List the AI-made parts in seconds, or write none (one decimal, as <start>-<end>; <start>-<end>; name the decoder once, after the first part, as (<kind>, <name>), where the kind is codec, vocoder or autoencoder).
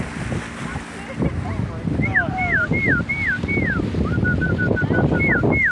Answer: none